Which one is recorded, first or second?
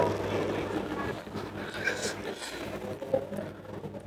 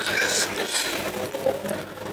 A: first